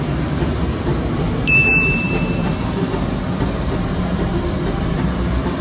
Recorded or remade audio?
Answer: remade